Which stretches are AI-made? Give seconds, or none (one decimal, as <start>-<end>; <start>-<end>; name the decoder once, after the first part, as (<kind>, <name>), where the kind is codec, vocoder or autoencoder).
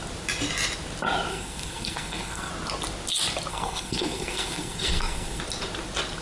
1.3-2.5 (codec, SNAC); 3.5-5.4